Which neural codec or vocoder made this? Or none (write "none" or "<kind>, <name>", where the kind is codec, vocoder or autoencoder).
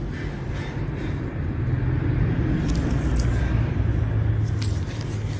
none